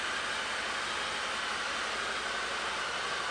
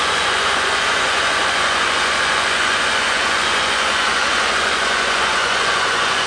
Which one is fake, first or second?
second